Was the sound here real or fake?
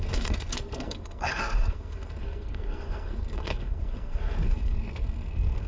fake